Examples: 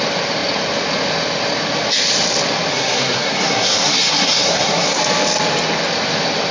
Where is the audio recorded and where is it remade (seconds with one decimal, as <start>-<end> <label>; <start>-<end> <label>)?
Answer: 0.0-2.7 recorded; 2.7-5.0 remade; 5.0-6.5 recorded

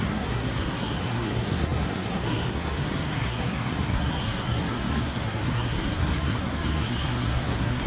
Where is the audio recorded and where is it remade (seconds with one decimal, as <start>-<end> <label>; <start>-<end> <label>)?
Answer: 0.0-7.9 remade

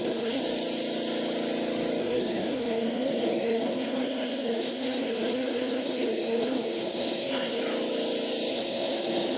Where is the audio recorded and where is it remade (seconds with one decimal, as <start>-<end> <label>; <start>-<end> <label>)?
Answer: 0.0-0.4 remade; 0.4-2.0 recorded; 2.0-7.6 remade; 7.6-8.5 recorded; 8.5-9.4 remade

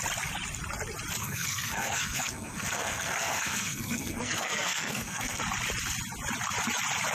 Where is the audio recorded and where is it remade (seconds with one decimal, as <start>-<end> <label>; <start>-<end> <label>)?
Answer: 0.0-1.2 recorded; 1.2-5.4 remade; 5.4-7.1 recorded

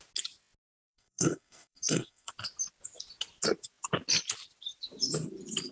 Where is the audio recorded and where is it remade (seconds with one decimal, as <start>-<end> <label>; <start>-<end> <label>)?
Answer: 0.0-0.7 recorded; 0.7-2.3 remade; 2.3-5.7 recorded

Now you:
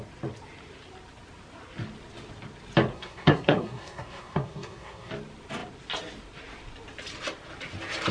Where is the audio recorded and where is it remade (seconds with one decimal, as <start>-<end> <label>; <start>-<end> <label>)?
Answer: 0.0-2.9 recorded; 2.9-5.1 remade; 5.1-8.1 recorded

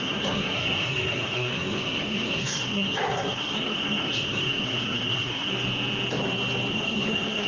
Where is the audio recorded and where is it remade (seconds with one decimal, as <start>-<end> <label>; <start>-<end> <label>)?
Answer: 0.0-5.5 remade; 5.5-6.7 recorded; 6.7-7.5 remade